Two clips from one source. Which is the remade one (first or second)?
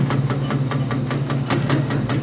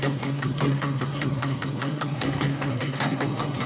second